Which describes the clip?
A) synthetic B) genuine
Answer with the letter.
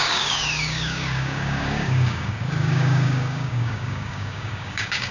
A